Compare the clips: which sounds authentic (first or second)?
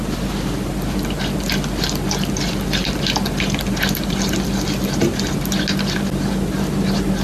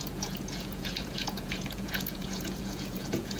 first